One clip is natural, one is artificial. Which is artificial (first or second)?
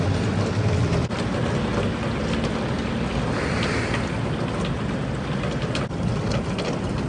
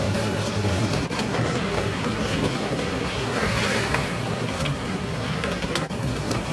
second